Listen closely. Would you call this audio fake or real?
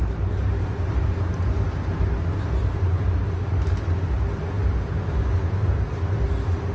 real